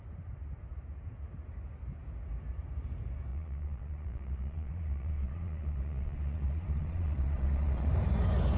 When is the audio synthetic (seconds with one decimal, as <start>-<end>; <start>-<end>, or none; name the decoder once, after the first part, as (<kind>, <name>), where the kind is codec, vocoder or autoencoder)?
3.3-7.9 (vocoder, Vocos)